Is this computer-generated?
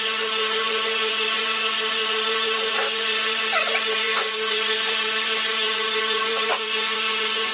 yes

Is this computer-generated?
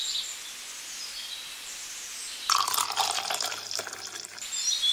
no